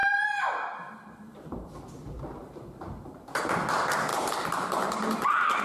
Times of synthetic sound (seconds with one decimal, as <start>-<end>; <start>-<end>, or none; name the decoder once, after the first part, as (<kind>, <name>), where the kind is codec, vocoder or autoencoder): 0.0-3.4 (vocoder, BigVGAN v2); 4.1-5.6